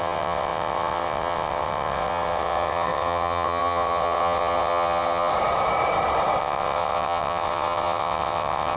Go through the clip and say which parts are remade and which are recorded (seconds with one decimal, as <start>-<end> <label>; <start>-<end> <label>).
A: 0.0-5.3 remade; 5.3-6.4 recorded; 6.4-8.8 remade

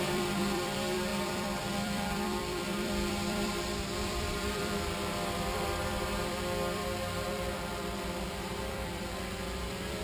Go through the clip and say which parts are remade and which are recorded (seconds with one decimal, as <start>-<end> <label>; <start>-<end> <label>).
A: 0.0-6.8 remade; 6.8-7.3 recorded; 7.3-10.0 remade

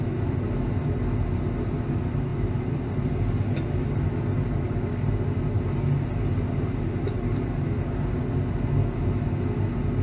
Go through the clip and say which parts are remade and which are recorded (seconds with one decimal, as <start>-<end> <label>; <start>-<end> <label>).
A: 0.0-2.3 recorded; 2.3-3.1 remade; 3.1-10.0 recorded

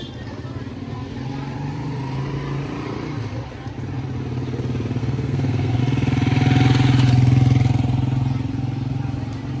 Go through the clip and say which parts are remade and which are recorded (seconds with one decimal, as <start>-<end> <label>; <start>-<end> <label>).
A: 0.0-5.0 recorded; 5.0-5.8 remade; 5.8-9.6 recorded

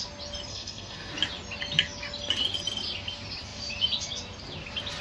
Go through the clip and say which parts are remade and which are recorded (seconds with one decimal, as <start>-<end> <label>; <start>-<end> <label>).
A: 0.0-0.5 recorded; 0.5-1.1 remade; 1.1-5.0 recorded

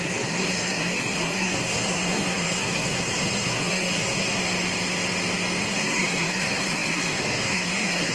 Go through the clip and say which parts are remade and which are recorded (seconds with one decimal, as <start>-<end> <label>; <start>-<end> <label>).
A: 0.0-4.4 remade; 4.4-5.6 recorded; 5.6-8.1 remade

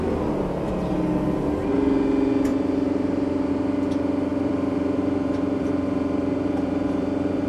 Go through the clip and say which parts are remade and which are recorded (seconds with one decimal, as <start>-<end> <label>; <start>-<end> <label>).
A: 0.0-2.5 recorded; 2.5-3.5 remade; 3.5-4.3 recorded; 4.3-7.5 remade